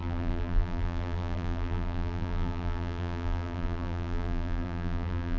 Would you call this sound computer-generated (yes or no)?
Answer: yes